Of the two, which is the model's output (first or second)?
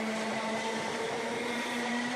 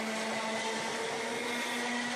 first